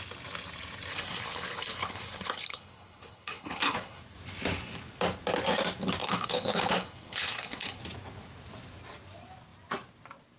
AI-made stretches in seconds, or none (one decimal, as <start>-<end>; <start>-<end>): 0.9-4.0; 6.0-7.8